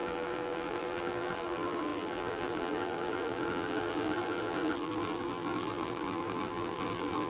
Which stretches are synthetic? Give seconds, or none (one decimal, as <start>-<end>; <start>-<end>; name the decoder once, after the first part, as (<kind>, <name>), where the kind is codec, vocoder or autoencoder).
0.0-7.3 (vocoder, BigVGAN v2)